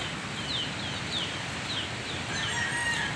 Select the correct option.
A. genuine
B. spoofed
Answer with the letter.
A